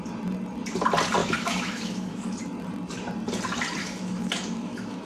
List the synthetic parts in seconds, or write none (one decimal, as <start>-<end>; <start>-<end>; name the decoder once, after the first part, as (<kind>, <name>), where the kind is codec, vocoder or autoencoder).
1.2-2.4 (autoencoder, DAC-VAE); 3.8-5.1